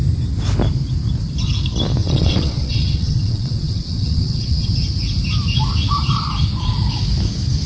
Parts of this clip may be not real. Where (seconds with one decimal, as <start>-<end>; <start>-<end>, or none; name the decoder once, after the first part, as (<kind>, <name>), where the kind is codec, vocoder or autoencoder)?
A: 2.0-4.7 (vocoder, WaveNeXt)